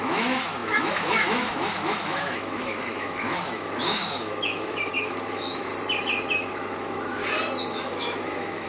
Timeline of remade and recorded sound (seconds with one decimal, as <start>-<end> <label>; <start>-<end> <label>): 0.0-5.7 remade; 5.7-6.3 recorded; 6.3-7.2 remade; 7.2-7.7 recorded; 7.7-8.7 remade